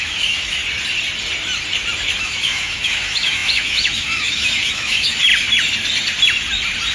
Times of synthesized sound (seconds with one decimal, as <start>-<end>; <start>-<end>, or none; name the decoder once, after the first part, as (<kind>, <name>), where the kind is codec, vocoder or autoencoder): 0.0-0.6 (autoencoder, DAC-VAE); 2.2-5.3